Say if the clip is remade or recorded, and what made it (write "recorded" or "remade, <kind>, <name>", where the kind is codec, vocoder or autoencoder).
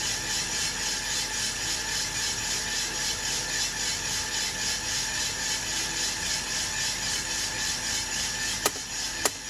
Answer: recorded